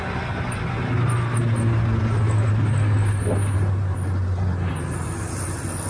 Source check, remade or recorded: recorded